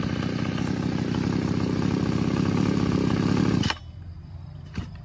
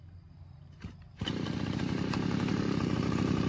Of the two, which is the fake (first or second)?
second